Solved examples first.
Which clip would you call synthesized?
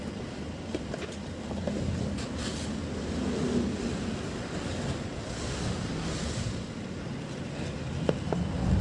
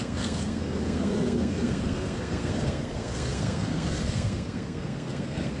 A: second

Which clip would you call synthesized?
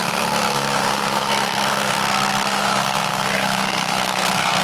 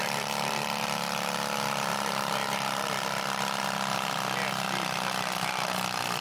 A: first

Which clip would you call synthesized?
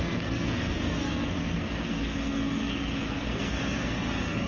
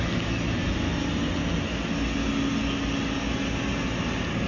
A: first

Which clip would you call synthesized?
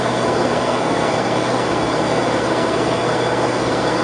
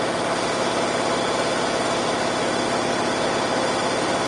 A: first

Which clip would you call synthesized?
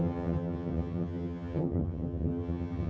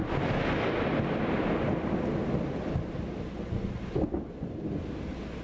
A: first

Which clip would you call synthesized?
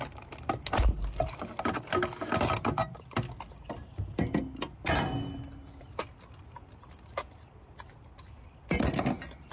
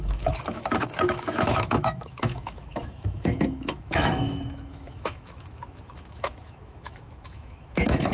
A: second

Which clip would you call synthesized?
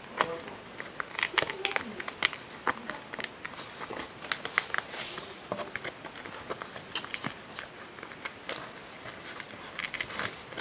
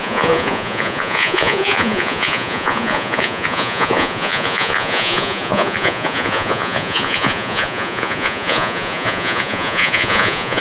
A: second